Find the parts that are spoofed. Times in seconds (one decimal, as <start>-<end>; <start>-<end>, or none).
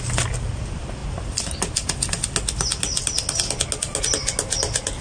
none